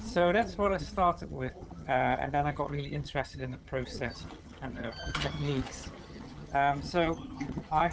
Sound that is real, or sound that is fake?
fake